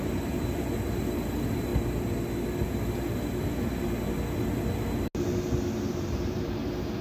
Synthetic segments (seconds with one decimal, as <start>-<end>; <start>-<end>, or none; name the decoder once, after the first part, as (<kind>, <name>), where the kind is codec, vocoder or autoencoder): 0.0-1.7 (vocoder, BigVGAN v2); 5.9-7.0